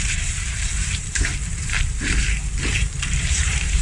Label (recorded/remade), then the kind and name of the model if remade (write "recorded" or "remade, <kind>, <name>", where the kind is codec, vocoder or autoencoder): remade, vocoder, BigVGAN v2